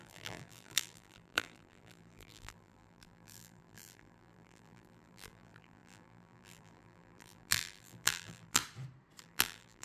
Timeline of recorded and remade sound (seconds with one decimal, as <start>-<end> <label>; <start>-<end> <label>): 0.0-8.6 remade; 8.6-9.2 recorded; 9.2-9.8 remade